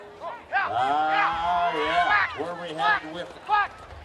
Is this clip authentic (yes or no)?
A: yes